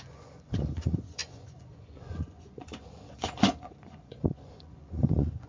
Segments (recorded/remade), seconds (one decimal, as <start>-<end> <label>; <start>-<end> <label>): 0.0-5.5 remade